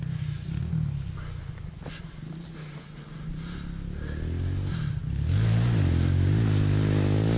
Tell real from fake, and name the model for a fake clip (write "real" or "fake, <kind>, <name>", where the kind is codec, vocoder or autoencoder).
real